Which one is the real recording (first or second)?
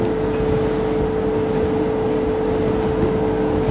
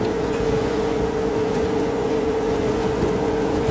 first